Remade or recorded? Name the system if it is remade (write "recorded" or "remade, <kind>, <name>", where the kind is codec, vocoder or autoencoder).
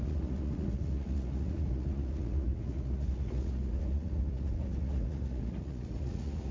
remade, vocoder, Vocos